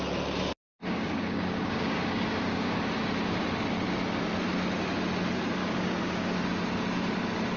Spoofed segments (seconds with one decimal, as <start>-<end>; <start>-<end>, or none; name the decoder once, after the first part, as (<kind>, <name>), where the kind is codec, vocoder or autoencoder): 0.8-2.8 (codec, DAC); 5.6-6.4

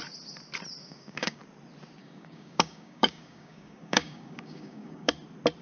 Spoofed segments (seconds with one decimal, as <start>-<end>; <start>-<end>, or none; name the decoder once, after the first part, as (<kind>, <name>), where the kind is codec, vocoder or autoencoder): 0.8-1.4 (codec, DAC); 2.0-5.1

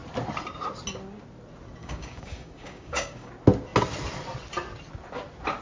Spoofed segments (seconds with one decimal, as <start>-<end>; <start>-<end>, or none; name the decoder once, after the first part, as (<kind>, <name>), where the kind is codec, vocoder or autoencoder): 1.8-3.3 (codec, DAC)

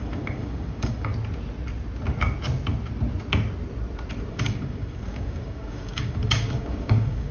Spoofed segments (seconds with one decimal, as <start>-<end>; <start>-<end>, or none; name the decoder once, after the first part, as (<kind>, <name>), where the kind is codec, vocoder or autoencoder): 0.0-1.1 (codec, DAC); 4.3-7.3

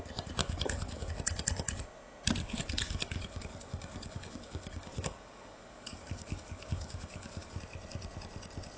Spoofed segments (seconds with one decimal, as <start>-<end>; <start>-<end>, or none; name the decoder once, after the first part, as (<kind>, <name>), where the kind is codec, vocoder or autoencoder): 0.4-1.1 (codec, DAC); 2.4-7.6

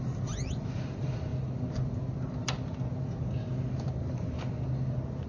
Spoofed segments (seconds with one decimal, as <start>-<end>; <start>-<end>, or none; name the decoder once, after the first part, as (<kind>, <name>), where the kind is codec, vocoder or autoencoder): none

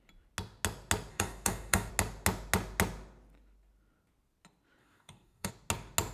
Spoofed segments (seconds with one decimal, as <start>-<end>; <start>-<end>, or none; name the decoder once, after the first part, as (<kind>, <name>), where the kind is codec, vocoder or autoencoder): 1.1-1.9 (codec, DAC); 4.8-5.5